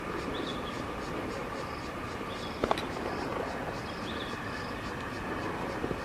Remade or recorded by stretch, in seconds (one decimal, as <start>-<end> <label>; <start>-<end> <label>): 0.0-1.4 recorded; 1.4-2.5 remade; 2.5-6.0 recorded

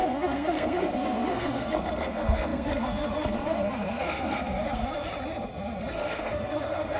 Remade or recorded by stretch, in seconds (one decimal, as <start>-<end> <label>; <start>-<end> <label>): 0.0-4.8 remade; 4.8-5.8 recorded; 5.8-7.0 remade

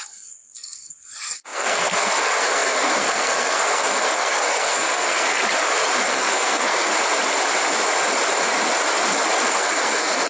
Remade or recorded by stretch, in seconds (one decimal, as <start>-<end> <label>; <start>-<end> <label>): 0.0-5.4 remade; 5.4-6.0 recorded; 6.0-6.9 remade; 6.9-9.5 recorded; 9.5-10.3 remade

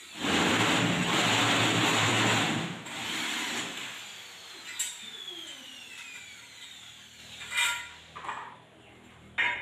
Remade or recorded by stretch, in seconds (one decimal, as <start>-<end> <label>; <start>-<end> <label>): 0.0-9.6 recorded

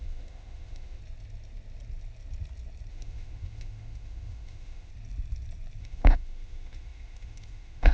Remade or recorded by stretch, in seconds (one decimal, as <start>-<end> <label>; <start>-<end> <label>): 0.0-1.0 remade; 1.0-2.9 recorded; 2.9-4.9 remade; 4.9-5.8 recorded; 5.8-7.9 remade

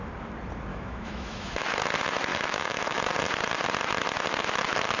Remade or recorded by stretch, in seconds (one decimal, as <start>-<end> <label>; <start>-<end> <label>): 0.0-0.7 recorded; 0.7-1.8 remade; 1.8-2.3 recorded; 2.3-3.0 remade; 3.0-5.0 recorded

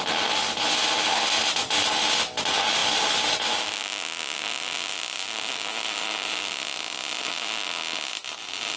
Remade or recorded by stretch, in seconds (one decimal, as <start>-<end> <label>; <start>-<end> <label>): 0.0-8.8 recorded

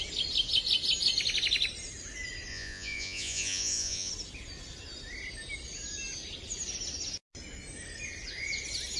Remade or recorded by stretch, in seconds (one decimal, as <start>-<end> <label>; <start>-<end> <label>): 0.0-2.5 recorded; 2.5-4.1 remade; 4.1-9.0 recorded